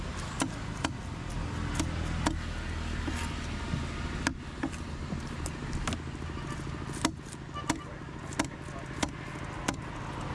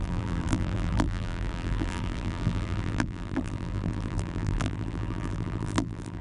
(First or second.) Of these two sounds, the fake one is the second